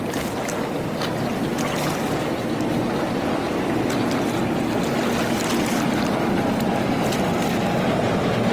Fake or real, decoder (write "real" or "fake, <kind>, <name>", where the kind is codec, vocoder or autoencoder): real